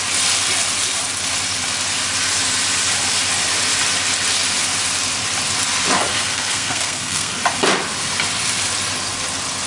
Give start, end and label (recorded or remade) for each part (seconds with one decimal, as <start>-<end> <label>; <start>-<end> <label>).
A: 0.0-6.1 recorded; 6.1-7.3 remade; 7.3-9.7 recorded